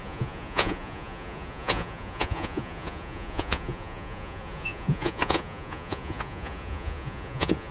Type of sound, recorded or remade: remade